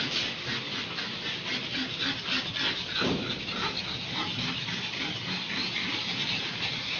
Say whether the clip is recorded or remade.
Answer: recorded